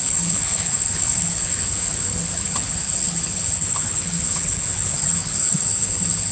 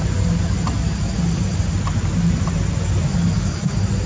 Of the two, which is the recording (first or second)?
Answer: second